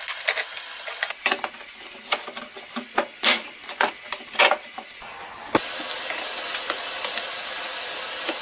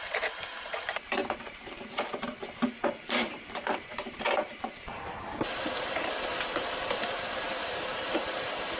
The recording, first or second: first